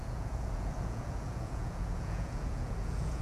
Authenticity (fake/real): fake